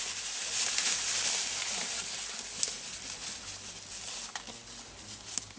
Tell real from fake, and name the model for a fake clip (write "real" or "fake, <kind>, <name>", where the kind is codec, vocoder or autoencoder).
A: real